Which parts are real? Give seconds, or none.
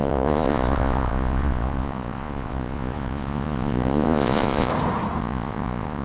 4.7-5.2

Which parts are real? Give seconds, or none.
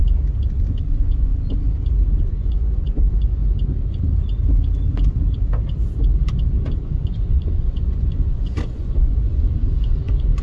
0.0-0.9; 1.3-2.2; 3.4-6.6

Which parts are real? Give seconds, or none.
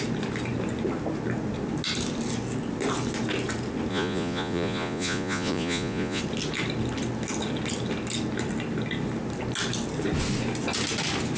0.0-3.9; 6.2-11.4